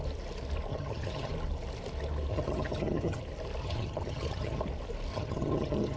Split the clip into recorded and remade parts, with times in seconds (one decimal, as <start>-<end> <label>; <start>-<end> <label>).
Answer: 0.0-0.7 recorded; 0.7-1.3 remade; 1.3-2.3 recorded; 2.3-3.2 remade; 3.2-3.6 recorded; 3.6-4.6 remade; 4.6-5.1 recorded; 5.1-6.0 remade